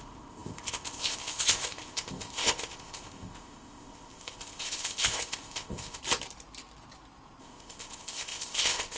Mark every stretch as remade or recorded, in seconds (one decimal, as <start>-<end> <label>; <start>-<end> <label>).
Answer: 0.0-6.0 remade; 6.0-7.4 recorded; 7.4-9.0 remade